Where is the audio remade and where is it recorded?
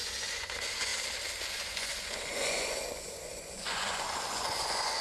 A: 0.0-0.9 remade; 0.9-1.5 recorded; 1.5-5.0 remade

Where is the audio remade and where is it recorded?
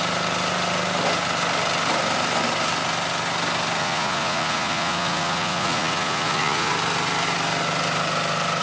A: 0.0-3.8 recorded; 3.8-6.7 remade; 6.7-8.6 recorded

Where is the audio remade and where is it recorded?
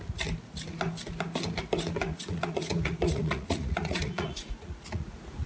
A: 0.0-2.1 recorded; 2.1-5.5 remade